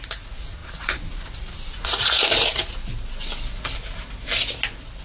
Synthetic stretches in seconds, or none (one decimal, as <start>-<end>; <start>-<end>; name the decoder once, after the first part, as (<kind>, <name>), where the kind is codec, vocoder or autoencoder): 0.0-2.8 (vocoder, Vocos)